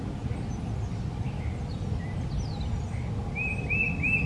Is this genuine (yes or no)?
yes